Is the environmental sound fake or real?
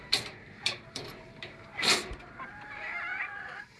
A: fake